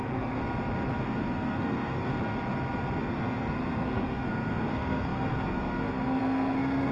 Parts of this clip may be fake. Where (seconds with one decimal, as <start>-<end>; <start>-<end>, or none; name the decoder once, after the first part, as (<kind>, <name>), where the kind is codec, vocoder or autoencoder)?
0.0-0.4 (codec, SNAC); 1.0-2.1; 3.0-6.9

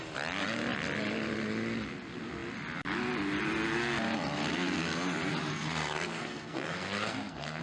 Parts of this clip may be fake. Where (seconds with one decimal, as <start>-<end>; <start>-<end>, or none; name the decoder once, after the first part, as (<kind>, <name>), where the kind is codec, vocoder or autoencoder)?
5.5-7.6 (codec, SNAC)

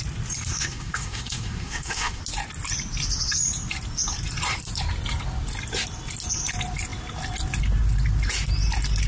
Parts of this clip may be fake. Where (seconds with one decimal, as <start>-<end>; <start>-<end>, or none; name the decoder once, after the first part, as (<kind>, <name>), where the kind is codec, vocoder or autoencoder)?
0.5-2.2 (codec, SNAC)

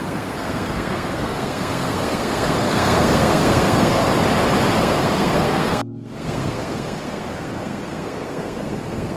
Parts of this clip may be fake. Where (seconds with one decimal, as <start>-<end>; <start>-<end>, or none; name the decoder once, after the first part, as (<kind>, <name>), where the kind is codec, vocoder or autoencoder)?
0.0-4.0 (codec, SNAC); 4.8-9.2

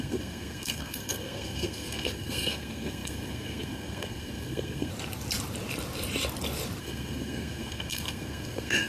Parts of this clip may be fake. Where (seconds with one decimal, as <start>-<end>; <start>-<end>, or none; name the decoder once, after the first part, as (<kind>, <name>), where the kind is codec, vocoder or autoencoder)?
0.0-4.9 (codec, SNAC); 6.8-8.9